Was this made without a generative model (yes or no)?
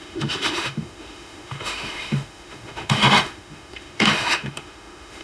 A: no